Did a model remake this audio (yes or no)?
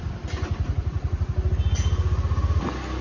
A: no